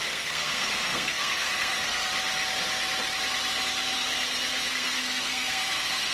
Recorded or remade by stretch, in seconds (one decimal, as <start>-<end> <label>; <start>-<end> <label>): 0.0-2.1 remade; 2.1-4.7 recorded; 4.7-6.1 remade